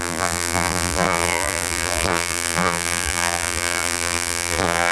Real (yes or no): no